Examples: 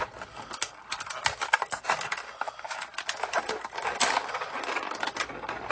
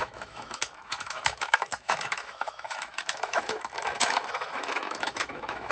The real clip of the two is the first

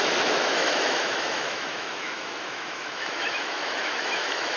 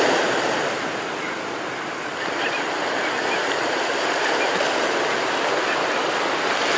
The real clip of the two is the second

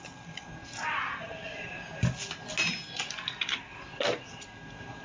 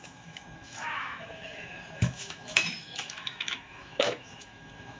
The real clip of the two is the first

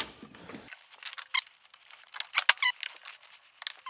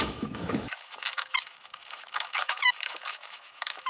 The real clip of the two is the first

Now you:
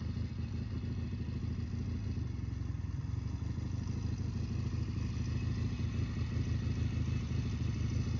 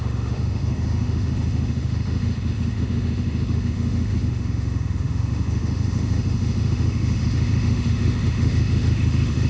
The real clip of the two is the first